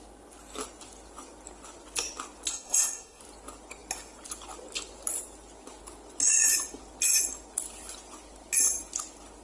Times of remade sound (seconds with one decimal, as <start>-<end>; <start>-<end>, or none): 2.5-3.2